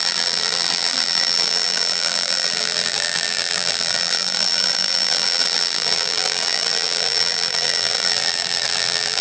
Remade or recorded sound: remade